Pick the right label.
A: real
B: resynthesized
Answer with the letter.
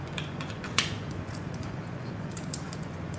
B